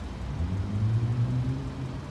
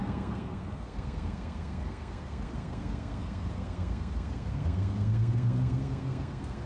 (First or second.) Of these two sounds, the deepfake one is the second